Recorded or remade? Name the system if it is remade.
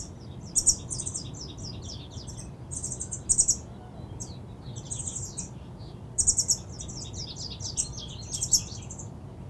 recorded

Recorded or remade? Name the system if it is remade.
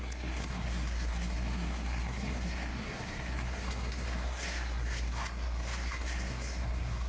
remade, codec, SNAC